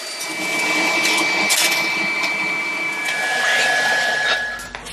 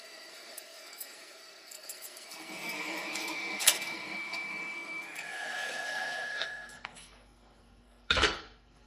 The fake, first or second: second